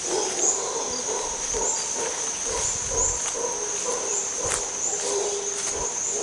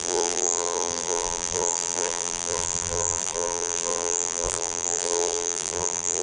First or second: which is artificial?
second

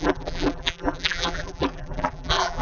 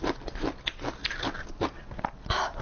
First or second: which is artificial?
first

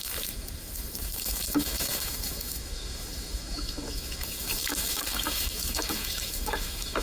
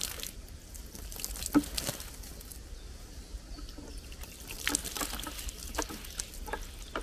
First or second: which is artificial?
first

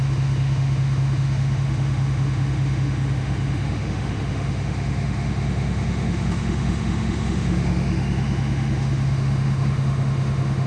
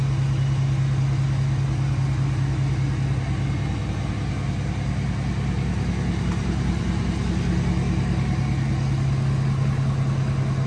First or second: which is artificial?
first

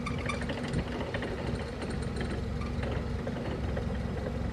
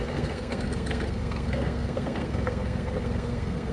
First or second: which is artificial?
second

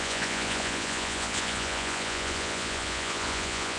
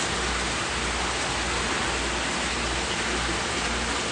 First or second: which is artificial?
first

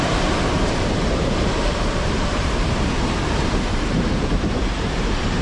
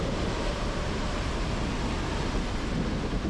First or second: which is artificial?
first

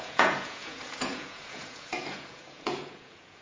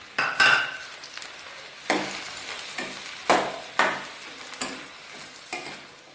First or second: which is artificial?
first